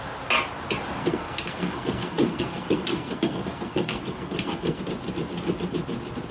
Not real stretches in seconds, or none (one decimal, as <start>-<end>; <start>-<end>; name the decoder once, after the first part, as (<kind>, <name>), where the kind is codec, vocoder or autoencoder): 1.0-4.8 (codec, SNAC)